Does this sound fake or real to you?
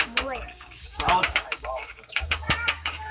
fake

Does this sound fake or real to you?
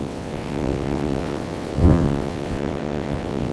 fake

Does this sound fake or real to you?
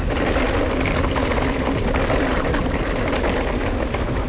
real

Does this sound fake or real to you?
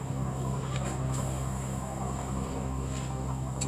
fake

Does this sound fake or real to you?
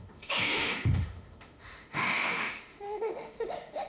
fake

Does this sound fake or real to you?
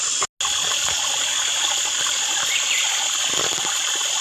real